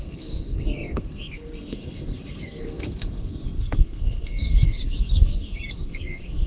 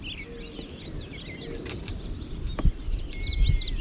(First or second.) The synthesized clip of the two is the first